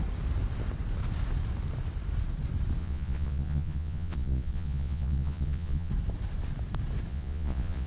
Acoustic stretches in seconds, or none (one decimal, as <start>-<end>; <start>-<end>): 0.0-2.8; 5.9-7.1